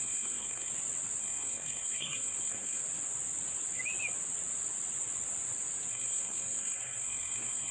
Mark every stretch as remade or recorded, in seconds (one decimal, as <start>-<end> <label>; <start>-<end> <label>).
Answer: 0.0-0.7 remade; 0.7-1.2 recorded; 1.2-2.8 remade; 2.8-5.9 recorded; 5.9-7.7 remade